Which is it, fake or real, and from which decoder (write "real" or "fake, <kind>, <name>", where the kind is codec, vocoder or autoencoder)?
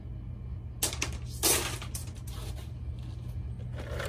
real